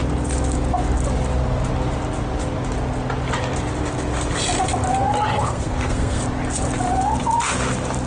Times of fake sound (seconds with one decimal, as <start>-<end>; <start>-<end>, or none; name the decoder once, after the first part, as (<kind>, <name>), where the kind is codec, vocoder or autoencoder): 5.3-6.2 (codec, SNAC)